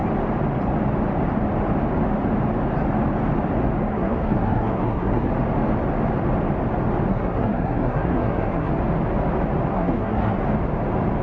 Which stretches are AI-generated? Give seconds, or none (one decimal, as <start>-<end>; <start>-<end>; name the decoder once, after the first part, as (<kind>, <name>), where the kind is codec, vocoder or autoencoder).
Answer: 3.9-5.3 (codec, SNAC); 7.1-8.7; 9.7-10.4